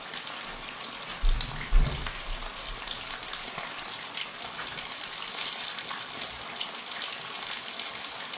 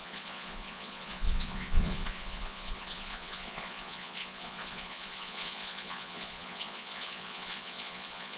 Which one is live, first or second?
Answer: first